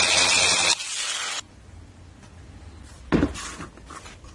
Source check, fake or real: real